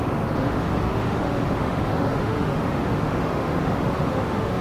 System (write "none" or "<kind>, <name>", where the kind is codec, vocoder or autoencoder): autoencoder, DAC-VAE